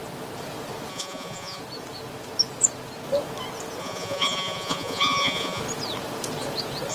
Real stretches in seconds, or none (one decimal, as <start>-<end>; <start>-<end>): 0.0-0.9; 1.6-3.8; 5.6-6.9